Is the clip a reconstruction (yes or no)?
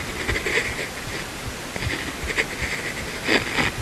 no